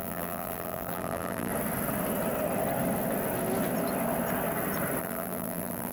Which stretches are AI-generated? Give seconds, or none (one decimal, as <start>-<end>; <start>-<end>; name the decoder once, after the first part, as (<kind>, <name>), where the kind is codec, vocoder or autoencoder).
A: 0.0-1.5 (vocoder, BigVGAN v2); 5.0-5.9